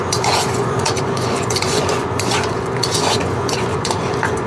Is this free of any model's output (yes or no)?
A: no